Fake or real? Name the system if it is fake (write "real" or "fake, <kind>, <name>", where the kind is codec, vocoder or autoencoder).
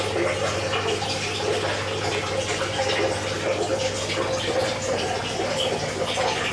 real